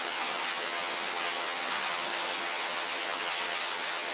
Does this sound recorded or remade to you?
remade